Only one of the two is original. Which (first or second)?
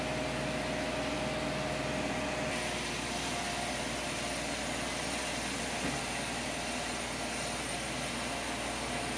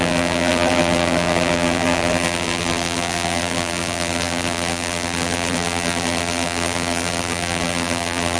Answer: first